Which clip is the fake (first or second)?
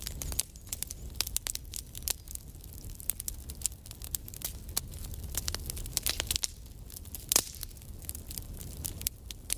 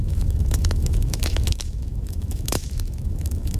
second